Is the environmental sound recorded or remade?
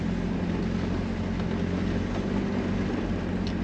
recorded